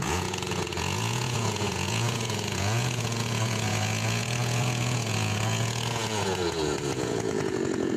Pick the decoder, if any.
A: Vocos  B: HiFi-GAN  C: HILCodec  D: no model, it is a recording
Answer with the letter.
A